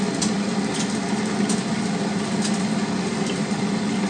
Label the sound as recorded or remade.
recorded